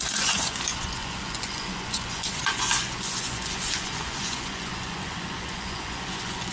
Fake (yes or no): yes